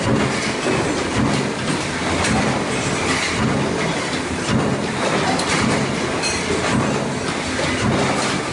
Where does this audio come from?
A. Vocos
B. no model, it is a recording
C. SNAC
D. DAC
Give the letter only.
B